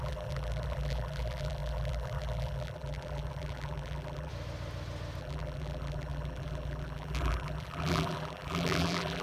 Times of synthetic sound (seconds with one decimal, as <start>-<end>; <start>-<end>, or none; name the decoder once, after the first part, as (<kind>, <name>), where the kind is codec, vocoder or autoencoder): 0.0-4.3 (vocoder, BigVGAN v2); 5.2-9.2